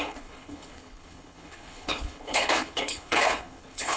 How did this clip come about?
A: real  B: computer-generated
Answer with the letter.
B